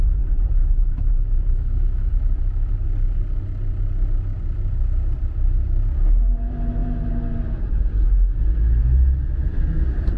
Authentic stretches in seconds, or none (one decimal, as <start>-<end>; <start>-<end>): 0.0-0.6; 2.7-10.2